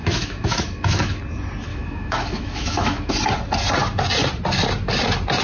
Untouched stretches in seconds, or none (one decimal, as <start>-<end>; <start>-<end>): 1.2-1.7; 3.1-5.4